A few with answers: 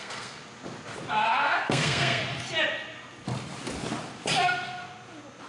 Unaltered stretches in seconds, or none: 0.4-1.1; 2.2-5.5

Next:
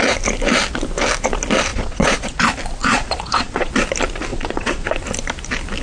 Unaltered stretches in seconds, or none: 0.0-1.7; 2.4-2.8; 3.7-4.3; 5.0-5.8

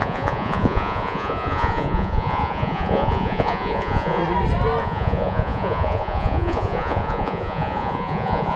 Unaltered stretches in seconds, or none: 4.2-4.8

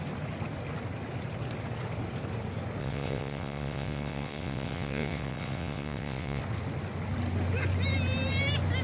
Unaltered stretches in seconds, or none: 0.0-2.8; 6.4-8.8

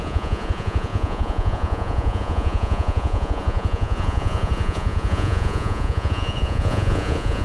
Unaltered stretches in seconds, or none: none

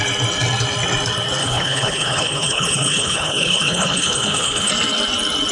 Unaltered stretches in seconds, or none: 0.0-1.4; 4.7-5.5

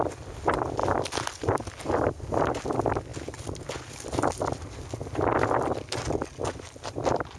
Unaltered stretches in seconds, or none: 0.0-7.4